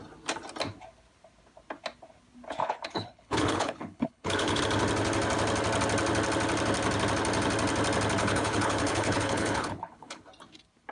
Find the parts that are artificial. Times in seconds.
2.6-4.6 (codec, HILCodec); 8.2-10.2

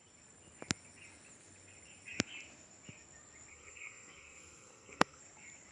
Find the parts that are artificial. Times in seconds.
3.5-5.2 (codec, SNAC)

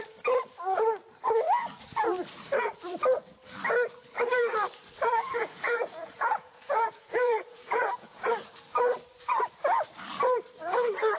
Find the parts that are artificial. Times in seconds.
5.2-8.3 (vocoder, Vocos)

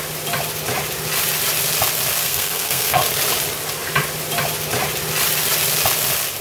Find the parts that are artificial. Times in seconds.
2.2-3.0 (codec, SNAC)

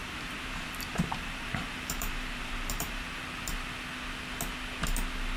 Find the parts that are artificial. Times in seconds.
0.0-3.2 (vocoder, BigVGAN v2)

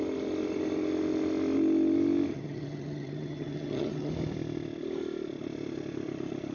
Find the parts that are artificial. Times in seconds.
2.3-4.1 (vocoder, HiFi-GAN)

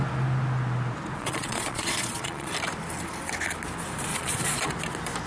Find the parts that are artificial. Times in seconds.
1.2-2.5 (vocoder, Vocos); 4.1-4.7